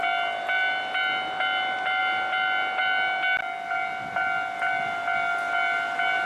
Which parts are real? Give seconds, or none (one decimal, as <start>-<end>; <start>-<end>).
0.0-6.3